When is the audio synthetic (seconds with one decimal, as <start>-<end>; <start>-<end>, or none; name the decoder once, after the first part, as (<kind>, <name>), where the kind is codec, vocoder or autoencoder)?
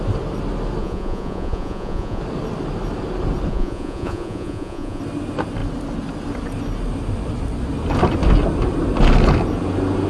0.8-2.2 (vocoder, Vocos); 3.5-5.0